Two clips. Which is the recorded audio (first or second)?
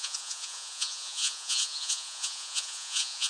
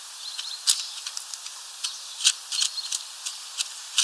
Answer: second